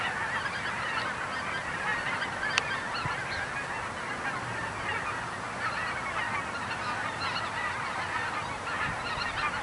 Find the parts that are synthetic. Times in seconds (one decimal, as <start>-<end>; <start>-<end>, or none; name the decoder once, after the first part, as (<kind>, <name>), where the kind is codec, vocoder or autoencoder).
none